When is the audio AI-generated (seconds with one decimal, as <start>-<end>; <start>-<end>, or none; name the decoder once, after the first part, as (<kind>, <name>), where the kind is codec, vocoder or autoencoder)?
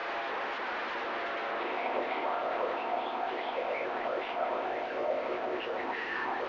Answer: 1.6-6.5 (codec, ZipCodec)